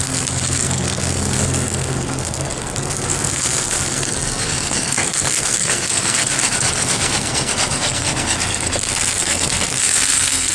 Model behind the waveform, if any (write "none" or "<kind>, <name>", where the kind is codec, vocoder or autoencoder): codec, SNAC